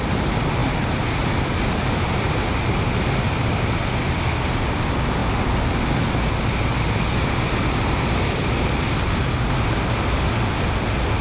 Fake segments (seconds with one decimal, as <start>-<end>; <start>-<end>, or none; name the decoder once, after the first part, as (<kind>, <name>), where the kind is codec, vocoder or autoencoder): none